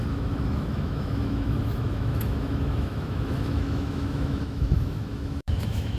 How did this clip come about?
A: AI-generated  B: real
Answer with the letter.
A